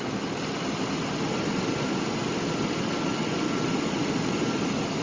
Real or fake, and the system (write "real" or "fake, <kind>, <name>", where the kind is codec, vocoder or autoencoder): real